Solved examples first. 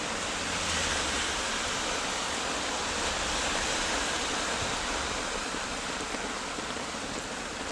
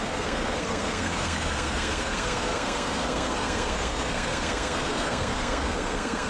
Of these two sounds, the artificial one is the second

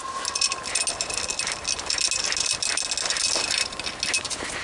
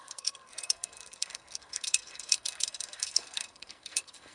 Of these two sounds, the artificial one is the second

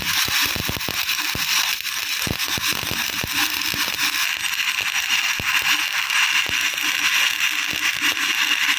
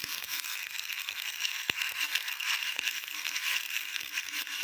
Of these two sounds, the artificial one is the second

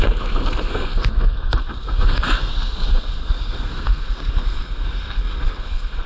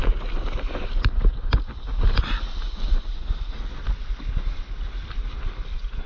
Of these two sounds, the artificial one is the first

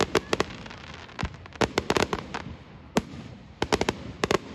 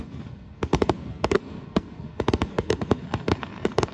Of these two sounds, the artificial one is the second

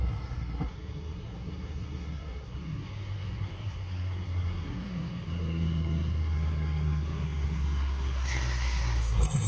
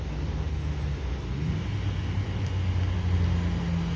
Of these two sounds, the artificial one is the first